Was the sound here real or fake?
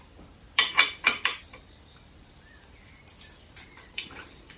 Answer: fake